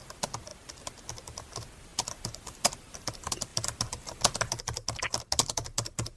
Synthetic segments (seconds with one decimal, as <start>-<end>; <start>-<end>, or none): 1.9-3.1; 3.5-4.4